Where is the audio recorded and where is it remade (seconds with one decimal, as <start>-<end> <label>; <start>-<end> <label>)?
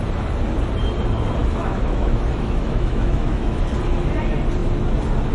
0.0-1.4 recorded; 1.4-3.6 remade; 3.6-5.3 recorded